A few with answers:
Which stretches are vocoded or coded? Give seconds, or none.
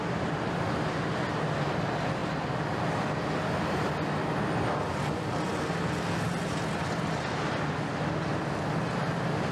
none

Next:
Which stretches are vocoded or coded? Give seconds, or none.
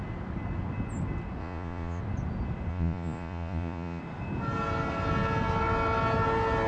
1.4-2.0 (vocoder, Vocos); 2.7-4.0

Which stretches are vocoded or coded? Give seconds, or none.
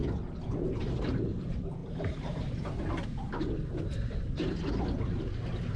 0.8-5.8 (vocoder, BigVGAN v2)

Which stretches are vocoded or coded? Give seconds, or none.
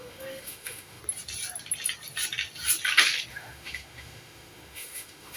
0.0-1.0 (autoencoder, DAC-VAE); 3.3-5.4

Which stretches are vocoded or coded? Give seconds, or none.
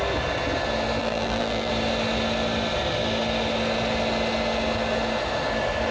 1.0-1.7 (vocoder, BigVGAN v2)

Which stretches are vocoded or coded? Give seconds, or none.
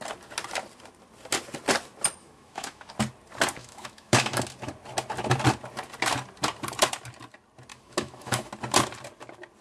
2.2-2.9 (autoencoder, DAC-VAE); 3.6-4.4; 7.7-8.5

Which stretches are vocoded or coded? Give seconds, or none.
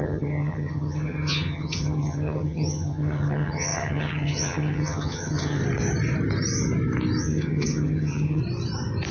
0.0-5.6 (vocoder, HiFi-GAN); 7.2-8.4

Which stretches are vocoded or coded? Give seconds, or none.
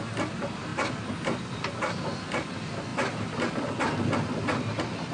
none